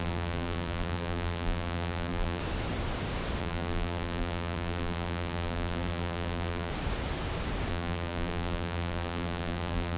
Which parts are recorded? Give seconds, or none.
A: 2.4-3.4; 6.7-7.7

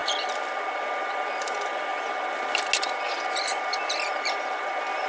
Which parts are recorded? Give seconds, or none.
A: 0.0-5.1

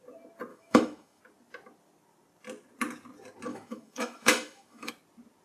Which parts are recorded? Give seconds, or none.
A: 0.0-0.5; 1.2-3.5; 4.9-5.4

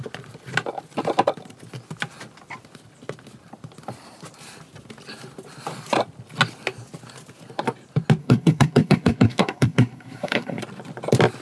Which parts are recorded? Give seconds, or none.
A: 0.0-8.2; 10.6-11.4

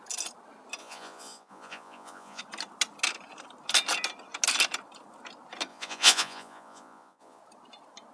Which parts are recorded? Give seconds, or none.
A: 0.0-0.8; 2.4-5.7; 7.4-8.1

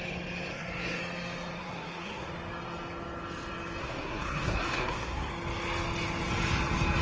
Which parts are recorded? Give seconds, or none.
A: 0.0-0.5; 1.0-1.6; 2.3-3.8; 5.3-7.0